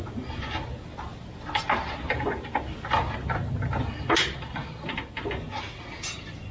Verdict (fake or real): real